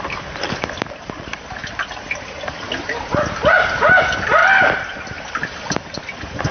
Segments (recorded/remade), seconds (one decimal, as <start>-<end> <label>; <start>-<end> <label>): 0.0-6.5 recorded